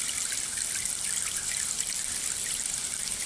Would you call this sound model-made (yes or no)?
yes